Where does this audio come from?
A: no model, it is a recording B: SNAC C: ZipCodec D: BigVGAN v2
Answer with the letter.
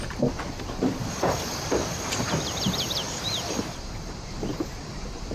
D